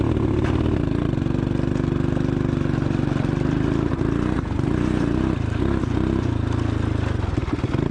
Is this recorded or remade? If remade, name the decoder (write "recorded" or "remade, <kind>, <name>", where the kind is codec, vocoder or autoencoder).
recorded